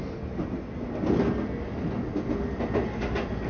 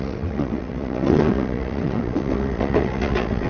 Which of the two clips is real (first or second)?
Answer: first